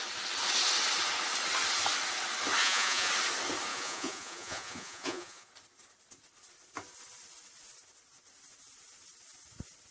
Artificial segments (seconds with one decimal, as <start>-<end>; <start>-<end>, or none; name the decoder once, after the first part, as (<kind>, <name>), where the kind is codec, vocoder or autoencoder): 2.6-3.1 (vocoder, Vocos); 3.7-5.5